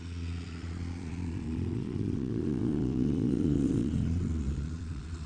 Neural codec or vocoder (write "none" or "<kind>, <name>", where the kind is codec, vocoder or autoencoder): vocoder, Vocos